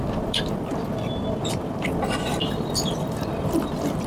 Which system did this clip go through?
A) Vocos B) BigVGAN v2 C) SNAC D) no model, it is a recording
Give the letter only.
B